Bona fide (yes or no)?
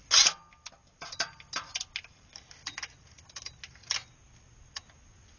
yes